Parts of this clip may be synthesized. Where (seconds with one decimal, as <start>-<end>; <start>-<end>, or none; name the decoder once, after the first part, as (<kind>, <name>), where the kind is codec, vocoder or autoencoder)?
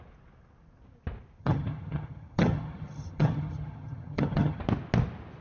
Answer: 1.4-4.6 (vocoder, HiFi-GAN)